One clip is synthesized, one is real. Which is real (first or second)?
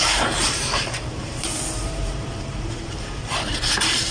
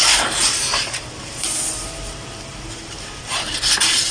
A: second